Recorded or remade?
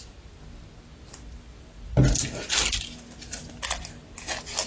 recorded